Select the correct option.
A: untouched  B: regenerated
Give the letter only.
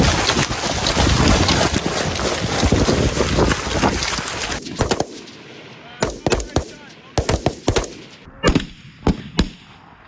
A